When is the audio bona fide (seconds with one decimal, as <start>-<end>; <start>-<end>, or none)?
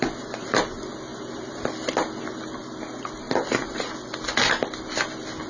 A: 0.0-5.5